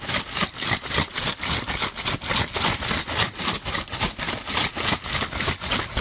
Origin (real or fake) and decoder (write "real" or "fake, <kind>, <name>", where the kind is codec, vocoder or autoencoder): real